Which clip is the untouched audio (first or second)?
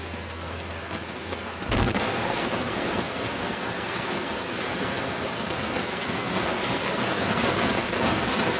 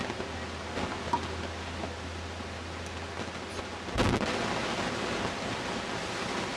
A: second